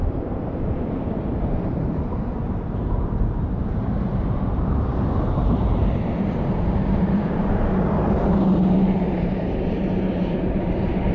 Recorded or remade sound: remade